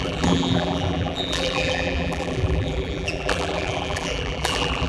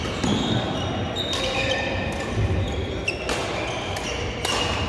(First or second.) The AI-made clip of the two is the first